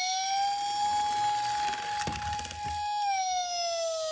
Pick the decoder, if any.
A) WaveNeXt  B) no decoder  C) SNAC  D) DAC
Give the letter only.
B